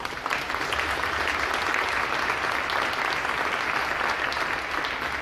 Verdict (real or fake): real